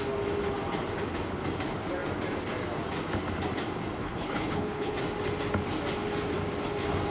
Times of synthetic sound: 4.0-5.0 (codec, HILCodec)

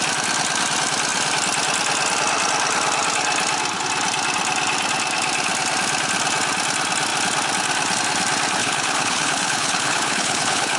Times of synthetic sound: 8.6-10.8 (codec, HILCodec)

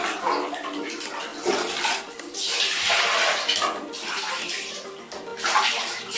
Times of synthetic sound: none

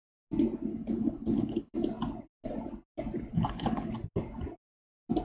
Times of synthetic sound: 0.7-1.7 (codec, HILCodec); 3.3-3.9

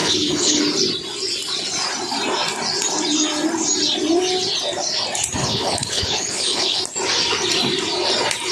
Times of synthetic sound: 0.0-0.6 (codec, HILCodec); 5.4-6.8